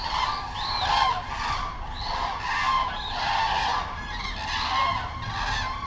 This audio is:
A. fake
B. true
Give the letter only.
B